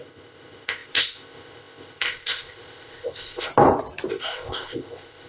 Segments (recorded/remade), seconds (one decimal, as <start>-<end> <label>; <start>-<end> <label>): 0.0-3.5 remade; 3.5-4.1 recorded; 4.1-5.3 remade